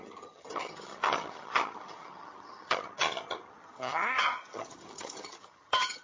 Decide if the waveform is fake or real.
fake